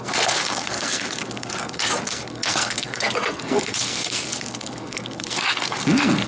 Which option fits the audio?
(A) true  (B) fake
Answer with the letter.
B